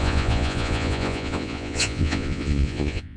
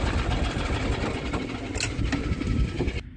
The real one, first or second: second